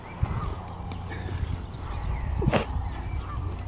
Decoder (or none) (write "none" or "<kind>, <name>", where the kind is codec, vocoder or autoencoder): none